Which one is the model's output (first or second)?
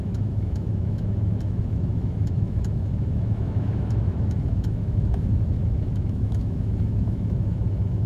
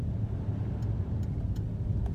first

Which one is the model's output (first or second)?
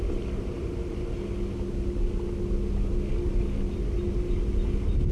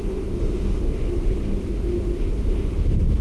second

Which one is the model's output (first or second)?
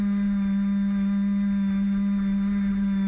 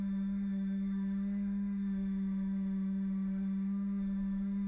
second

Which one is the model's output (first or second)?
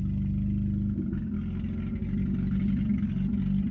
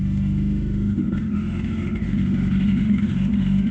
second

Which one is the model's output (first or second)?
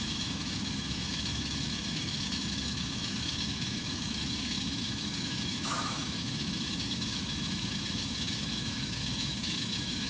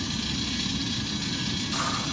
first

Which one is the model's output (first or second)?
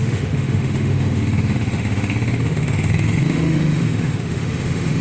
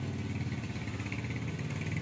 first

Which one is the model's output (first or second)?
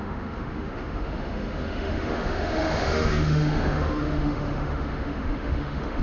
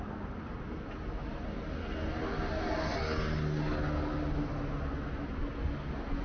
first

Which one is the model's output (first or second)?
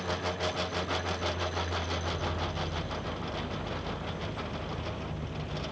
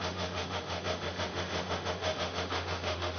second